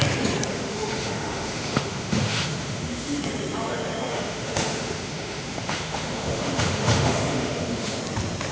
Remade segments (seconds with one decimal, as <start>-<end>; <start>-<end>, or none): 0.5-3.2; 4.1-8.0